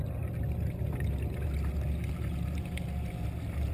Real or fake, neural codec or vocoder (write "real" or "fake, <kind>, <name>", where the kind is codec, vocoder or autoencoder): real